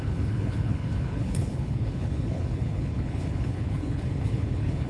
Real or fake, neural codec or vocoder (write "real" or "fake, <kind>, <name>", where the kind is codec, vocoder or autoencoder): fake, codec, HILCodec